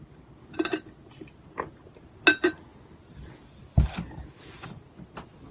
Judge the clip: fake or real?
real